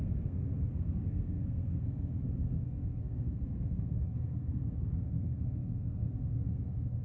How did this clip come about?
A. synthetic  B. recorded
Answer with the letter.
A